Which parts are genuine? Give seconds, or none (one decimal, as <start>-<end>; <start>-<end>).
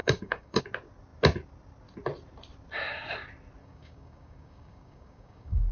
0.6-3.6